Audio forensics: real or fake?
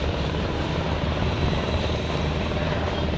fake